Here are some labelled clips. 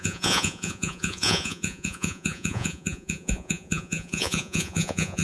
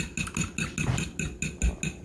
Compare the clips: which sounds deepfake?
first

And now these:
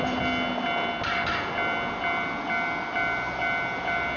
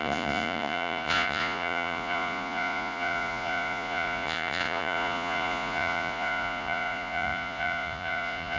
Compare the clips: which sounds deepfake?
second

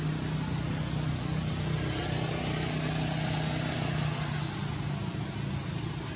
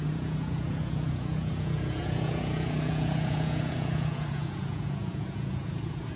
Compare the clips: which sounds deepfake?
second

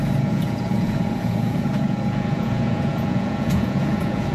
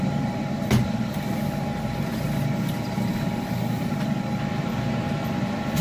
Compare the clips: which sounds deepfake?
first